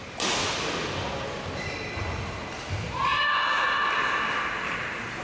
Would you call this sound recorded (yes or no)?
yes